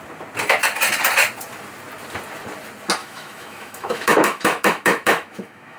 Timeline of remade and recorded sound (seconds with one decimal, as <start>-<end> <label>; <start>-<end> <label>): 0.0-3.0 recorded; 3.0-5.8 remade